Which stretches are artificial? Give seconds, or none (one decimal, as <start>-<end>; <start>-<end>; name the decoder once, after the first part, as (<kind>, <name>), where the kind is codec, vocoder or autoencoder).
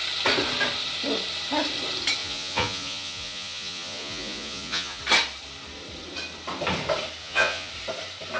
2.2-5.0 (vocoder, Vocos); 7.2-7.7